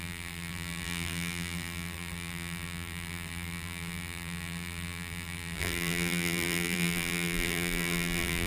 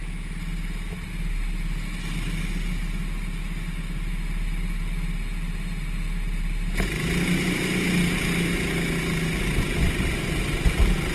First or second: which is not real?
first